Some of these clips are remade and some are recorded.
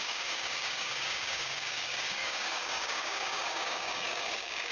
remade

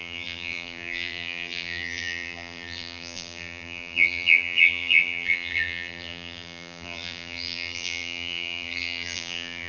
remade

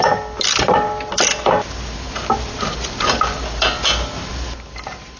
recorded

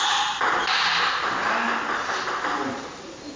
recorded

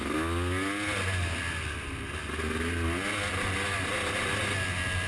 recorded